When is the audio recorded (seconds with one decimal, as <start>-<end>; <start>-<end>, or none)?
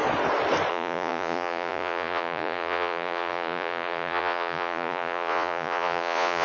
0.0-0.7